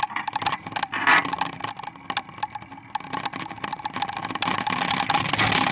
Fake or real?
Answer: real